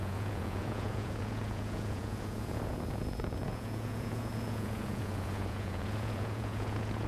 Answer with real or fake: fake